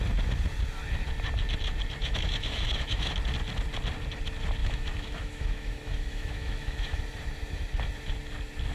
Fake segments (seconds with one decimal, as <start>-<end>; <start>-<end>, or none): 2.0-3.1; 4.6-7.0